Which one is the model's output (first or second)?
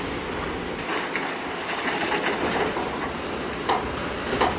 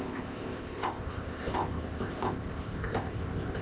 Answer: second